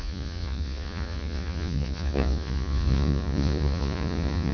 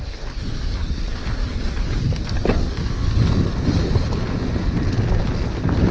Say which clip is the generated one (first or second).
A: first